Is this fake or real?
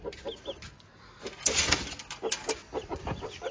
real